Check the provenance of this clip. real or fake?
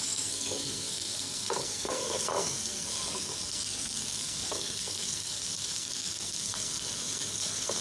fake